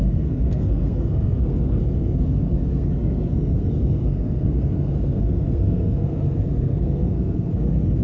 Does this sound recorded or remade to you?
remade